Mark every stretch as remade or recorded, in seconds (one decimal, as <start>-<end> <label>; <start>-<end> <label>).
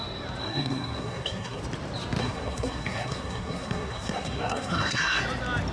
0.0-0.4 recorded; 0.4-1.6 remade; 1.6-2.2 recorded; 2.2-5.2 remade; 5.2-5.7 recorded